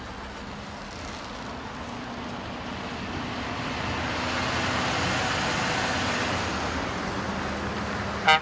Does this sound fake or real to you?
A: real